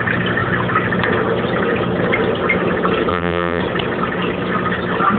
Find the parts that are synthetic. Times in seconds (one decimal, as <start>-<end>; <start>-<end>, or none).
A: 3.1-3.6

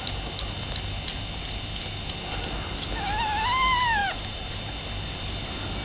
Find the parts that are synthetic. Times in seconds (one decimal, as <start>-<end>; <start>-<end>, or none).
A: 4.0-4.7